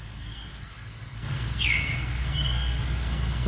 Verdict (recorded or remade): remade